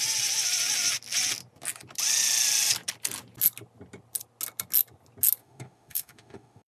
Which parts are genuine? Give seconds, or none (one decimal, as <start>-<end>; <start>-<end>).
0.0-5.4